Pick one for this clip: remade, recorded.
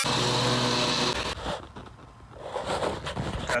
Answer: recorded